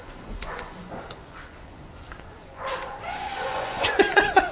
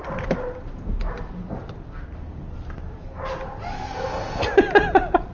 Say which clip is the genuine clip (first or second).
second